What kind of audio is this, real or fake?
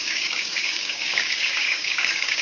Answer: fake